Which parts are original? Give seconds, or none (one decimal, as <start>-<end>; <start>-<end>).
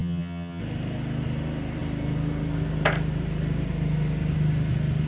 0.6-5.1